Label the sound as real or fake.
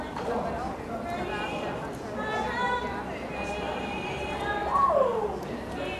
real